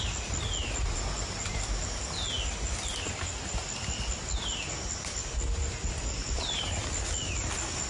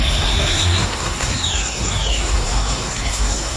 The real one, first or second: first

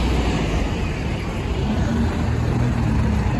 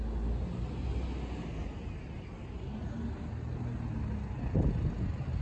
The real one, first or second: second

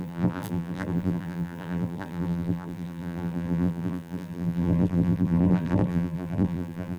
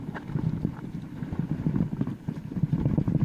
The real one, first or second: second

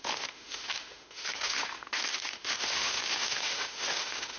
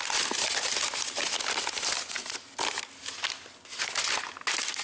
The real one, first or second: second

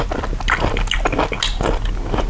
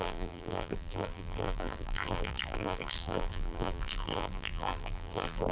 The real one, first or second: first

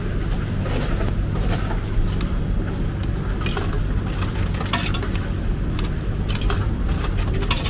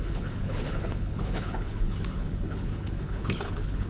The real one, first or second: first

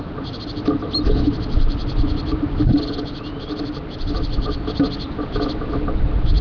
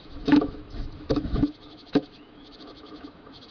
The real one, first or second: first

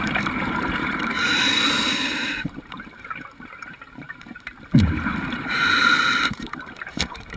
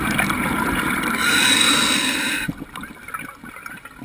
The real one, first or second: second